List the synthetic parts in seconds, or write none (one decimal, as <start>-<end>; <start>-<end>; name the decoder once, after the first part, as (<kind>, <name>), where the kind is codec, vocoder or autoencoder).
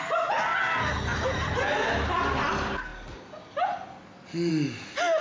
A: none